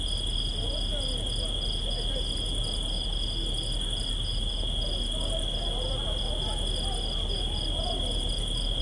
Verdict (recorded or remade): recorded